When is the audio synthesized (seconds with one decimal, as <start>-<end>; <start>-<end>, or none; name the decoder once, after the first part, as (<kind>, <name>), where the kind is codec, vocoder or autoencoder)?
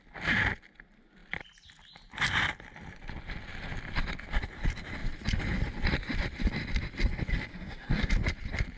7.5-8.1 (codec, SNAC)